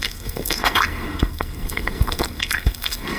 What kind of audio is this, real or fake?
fake